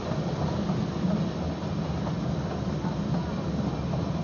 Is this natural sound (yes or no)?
yes